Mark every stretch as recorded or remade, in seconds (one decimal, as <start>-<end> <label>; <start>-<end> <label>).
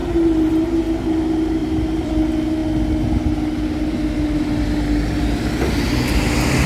0.0-1.6 recorded; 1.6-2.1 remade; 2.1-6.7 recorded